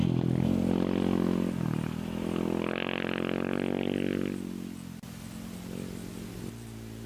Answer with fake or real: real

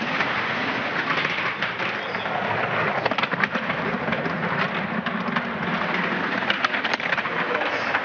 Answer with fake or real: real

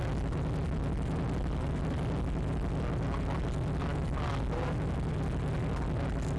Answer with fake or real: real